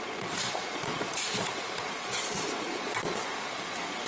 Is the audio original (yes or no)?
no